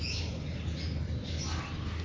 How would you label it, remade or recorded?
recorded